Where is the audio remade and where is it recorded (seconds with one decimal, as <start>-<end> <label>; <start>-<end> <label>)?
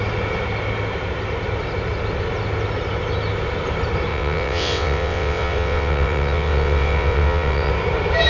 0.0-4.1 recorded; 4.1-7.7 remade; 7.7-8.3 recorded